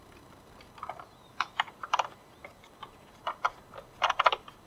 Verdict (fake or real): fake